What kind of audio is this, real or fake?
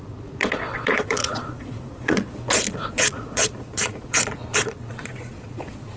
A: fake